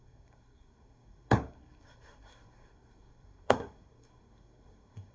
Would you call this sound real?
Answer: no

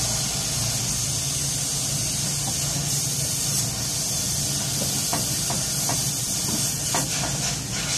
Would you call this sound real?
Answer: yes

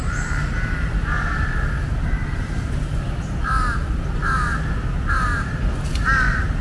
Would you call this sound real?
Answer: yes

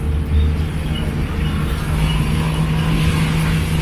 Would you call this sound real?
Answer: yes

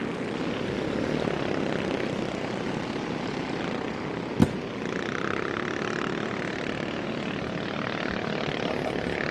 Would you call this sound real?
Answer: yes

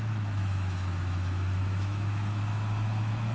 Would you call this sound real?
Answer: no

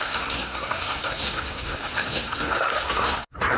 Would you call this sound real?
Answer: no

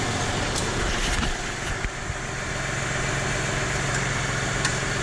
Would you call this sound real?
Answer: yes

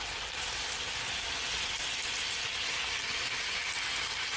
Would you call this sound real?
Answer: yes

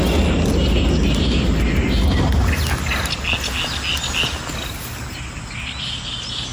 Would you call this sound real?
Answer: yes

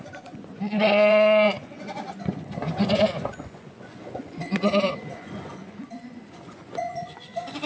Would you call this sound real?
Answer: no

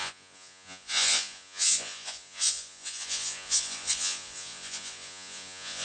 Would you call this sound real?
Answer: no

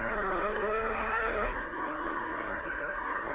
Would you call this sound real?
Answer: no